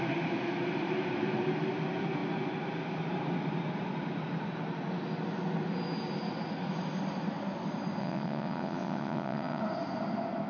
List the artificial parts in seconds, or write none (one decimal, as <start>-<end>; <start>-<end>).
8.0-9.6